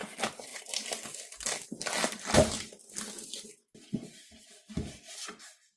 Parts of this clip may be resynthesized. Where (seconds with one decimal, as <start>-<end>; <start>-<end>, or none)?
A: none